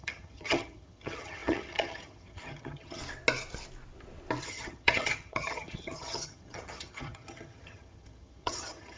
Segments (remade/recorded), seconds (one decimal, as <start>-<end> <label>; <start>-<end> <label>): 0.0-3.0 remade; 3.0-4.4 recorded; 4.4-9.0 remade